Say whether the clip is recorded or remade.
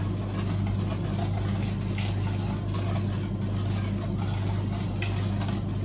recorded